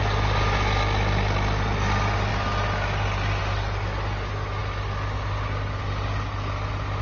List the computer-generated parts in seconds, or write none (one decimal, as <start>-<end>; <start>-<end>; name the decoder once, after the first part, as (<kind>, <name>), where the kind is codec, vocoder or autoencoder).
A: none